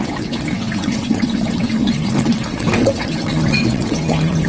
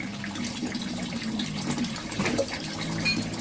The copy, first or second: first